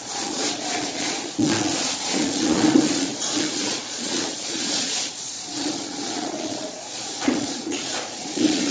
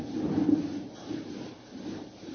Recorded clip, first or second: second